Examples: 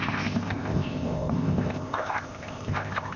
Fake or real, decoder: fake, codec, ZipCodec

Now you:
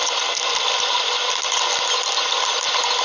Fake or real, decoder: real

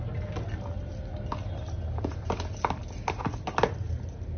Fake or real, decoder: real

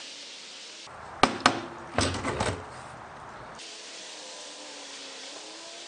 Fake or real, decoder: real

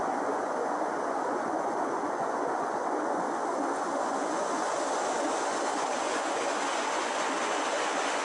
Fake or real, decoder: fake, vocoder, Vocos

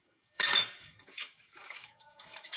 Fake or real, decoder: fake, codec, DAC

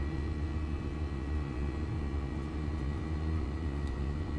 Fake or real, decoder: fake, vocoder, Vocos